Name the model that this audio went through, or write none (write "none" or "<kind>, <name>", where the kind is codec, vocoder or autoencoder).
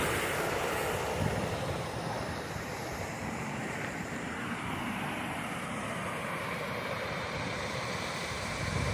vocoder, BigVGAN v2